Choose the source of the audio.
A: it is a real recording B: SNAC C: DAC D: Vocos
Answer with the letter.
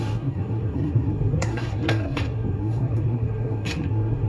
B